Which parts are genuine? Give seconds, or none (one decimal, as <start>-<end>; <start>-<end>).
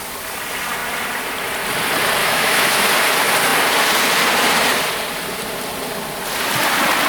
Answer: 0.0-2.2; 2.9-7.1